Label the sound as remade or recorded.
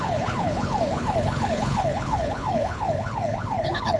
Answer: remade